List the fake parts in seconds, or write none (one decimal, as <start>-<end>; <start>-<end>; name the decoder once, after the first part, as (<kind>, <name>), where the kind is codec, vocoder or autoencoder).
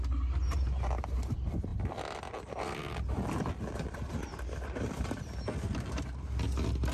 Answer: 1.7-5.2 (vocoder, BigVGAN v2)